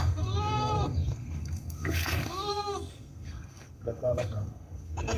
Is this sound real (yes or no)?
no